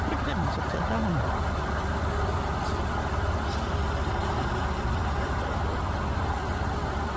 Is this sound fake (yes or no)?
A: no